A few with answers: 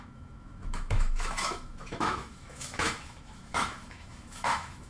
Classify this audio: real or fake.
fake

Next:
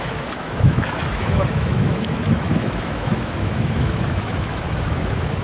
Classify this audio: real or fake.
fake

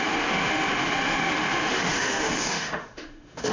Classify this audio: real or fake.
fake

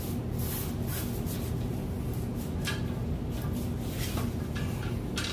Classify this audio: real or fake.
real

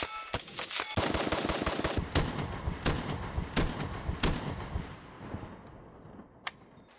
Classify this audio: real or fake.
real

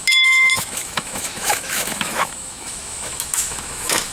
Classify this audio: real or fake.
fake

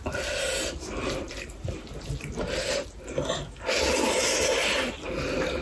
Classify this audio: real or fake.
real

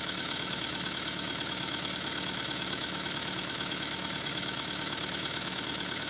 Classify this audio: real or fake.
fake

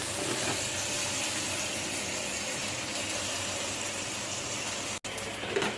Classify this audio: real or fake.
real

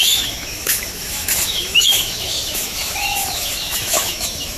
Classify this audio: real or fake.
fake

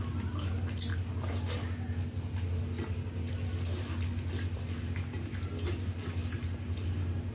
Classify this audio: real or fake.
real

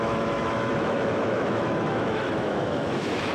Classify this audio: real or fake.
fake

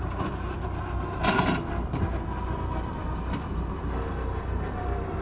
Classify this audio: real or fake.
real